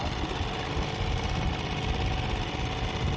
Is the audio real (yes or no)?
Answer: yes